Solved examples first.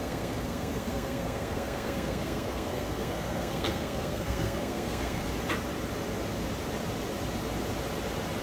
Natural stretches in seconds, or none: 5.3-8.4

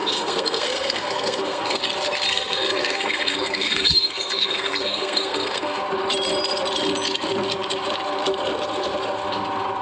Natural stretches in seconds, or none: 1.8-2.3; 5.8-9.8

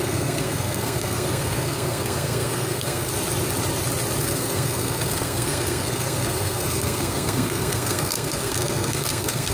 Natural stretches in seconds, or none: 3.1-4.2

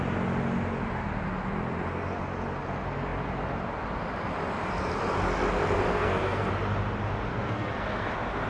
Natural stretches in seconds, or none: 0.0-5.9; 6.5-7.3; 8.1-8.5

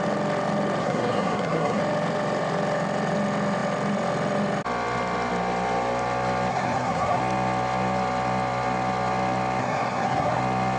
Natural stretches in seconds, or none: 0.0-0.8; 1.8-6.5; 7.2-9.6; 10.4-10.8

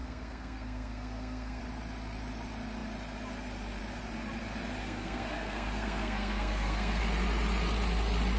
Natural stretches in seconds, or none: 1.6-4.8; 7.0-8.4

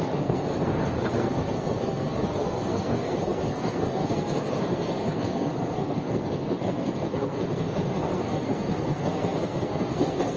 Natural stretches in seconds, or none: none

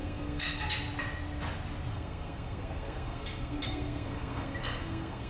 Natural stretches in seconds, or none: 0.6-1.9